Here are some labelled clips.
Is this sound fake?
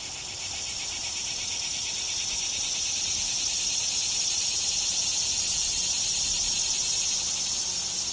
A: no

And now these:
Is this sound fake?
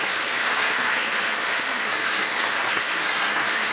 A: yes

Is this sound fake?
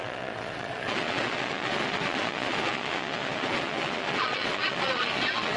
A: yes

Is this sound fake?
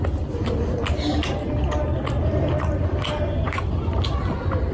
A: no